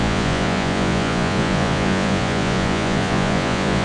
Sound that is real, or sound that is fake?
fake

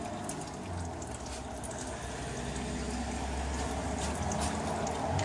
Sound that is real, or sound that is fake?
real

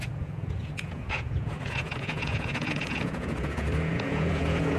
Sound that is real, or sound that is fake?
fake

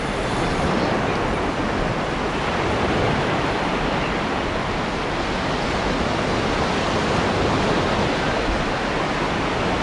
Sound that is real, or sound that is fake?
real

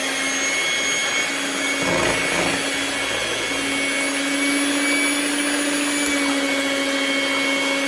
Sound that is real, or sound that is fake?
real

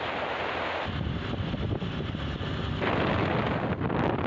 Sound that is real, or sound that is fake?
real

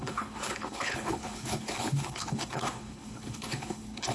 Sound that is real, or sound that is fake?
fake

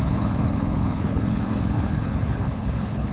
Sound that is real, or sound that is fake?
fake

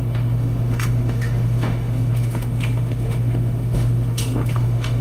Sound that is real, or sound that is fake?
fake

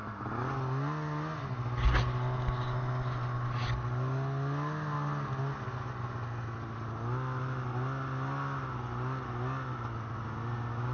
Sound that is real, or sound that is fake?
real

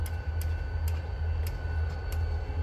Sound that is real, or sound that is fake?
real